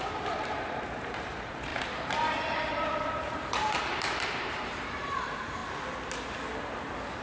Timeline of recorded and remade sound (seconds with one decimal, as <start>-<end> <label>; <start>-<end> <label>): 0.0-5.6 remade; 5.6-7.2 recorded